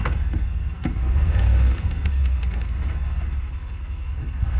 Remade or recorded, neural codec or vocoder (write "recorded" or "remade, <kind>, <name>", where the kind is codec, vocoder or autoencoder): remade, codec, SNAC